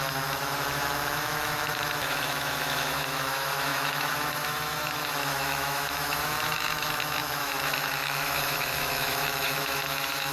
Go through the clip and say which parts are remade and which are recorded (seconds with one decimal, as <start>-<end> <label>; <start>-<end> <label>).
0.0-10.3 remade